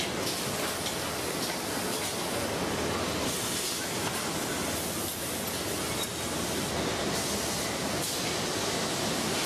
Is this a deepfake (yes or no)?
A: no